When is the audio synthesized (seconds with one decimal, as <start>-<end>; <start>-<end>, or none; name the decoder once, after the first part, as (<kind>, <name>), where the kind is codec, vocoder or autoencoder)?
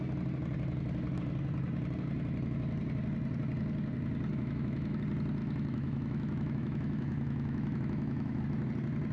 4.3-5.0 (autoencoder, DAC-VAE); 5.4-8.4